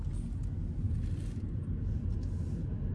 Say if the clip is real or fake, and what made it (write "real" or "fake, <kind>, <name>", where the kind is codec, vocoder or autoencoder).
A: real